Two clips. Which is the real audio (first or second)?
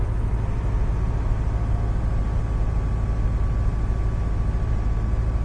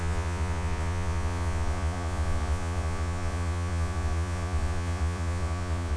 first